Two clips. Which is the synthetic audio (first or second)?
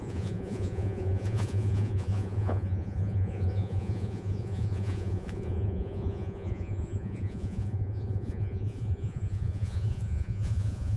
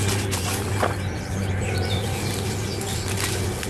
first